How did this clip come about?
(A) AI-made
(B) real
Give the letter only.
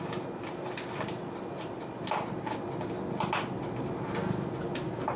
B